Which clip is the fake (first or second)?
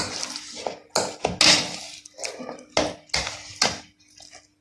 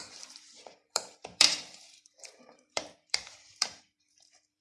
second